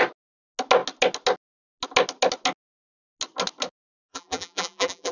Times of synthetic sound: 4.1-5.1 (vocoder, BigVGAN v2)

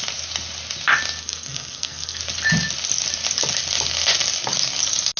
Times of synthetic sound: 1.2-2.2 (codec, SNAC)

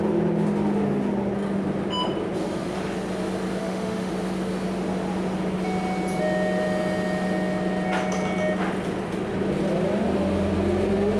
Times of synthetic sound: 3.6-4.1 (autoencoder, DAC-VAE)

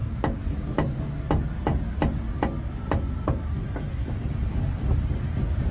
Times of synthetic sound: none